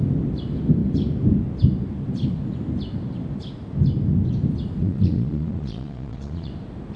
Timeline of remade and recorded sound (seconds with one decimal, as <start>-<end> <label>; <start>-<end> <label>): 0.0-4.8 recorded; 4.8-6.5 remade; 6.5-7.0 recorded